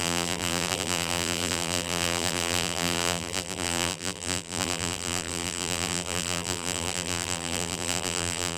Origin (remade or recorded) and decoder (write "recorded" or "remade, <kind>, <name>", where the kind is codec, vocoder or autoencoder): remade, vocoder, BigVGAN v2